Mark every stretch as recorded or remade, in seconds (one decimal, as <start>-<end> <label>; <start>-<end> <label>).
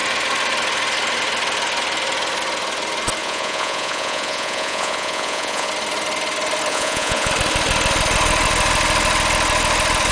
0.0-3.2 recorded; 3.2-5.7 remade; 5.7-6.7 recorded; 6.7-7.3 remade; 7.3-10.1 recorded